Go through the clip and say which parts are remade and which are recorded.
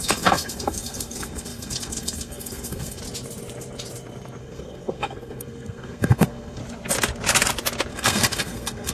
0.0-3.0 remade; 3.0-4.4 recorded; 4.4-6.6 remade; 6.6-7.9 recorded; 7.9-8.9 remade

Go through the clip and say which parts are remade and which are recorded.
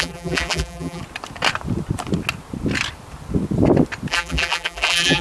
0.0-1.0 remade; 1.0-4.1 recorded; 4.1-5.2 remade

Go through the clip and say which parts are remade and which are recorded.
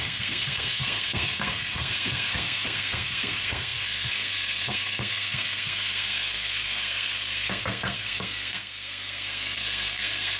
0.0-10.4 remade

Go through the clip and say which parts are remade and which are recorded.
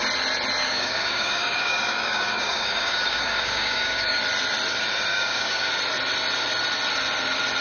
0.0-0.6 recorded; 0.6-4.2 remade; 4.2-5.1 recorded; 5.1-5.7 remade; 5.7-7.6 recorded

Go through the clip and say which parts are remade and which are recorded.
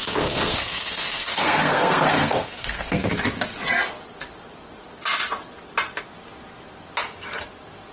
0.0-3.1 remade; 3.1-7.9 recorded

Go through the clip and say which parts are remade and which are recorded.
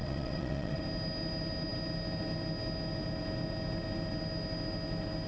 0.0-0.8 remade; 0.8-5.3 recorded